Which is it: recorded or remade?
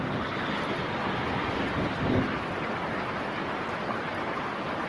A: recorded